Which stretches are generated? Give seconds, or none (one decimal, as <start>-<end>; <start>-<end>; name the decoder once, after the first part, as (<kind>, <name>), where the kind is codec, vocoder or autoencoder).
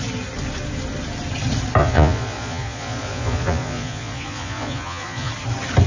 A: 1.8-5.3 (vocoder, Vocos)